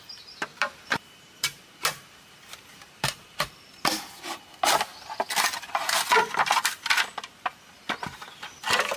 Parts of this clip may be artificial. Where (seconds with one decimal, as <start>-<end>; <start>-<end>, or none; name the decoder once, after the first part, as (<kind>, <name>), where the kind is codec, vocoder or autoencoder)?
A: 0.5-3.5 (vocoder, BigVGAN v2)